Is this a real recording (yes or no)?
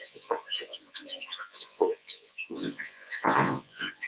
no